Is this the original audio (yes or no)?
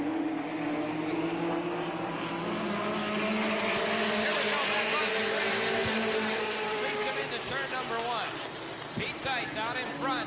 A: yes